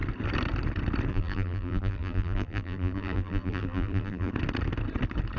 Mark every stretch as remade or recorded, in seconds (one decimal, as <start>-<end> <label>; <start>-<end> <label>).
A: 0.0-1.1 recorded; 1.1-4.3 remade; 4.3-5.4 recorded